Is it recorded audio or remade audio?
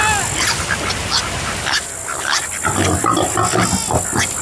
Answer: recorded